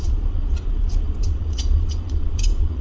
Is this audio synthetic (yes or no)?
yes